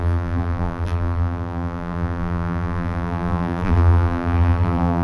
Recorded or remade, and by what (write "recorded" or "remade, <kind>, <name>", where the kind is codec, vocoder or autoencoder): remade, vocoder, BigVGAN v2